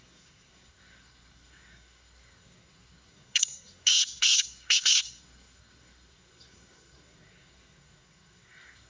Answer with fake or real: fake